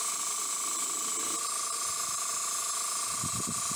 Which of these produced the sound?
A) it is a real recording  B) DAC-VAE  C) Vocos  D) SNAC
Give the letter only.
A